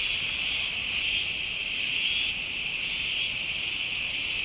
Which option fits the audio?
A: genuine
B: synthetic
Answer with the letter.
A